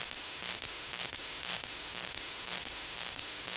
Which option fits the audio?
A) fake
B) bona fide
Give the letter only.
A